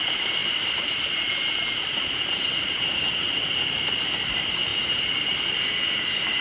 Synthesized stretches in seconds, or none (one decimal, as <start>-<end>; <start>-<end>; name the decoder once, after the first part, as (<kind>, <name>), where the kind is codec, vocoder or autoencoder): 0.0-6.4 (vocoder, BigVGAN v2)